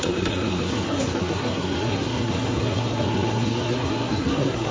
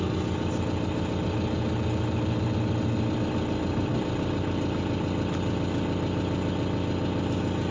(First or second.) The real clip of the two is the second